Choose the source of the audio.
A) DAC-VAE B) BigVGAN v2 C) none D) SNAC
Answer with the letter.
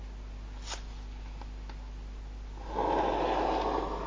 C